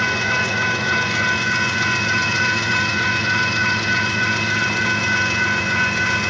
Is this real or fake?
fake